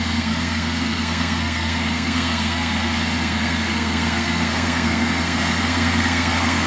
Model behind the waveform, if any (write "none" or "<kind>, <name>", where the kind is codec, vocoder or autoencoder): codec, SNAC